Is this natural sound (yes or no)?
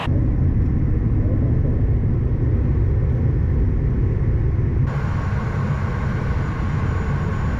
yes